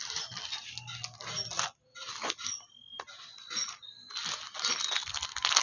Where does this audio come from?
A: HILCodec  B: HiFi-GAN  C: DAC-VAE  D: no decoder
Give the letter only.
D